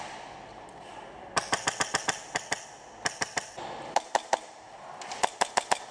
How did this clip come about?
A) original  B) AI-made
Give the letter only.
A